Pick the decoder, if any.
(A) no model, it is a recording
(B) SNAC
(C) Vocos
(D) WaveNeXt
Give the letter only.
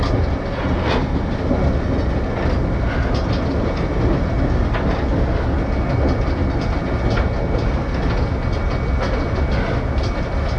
A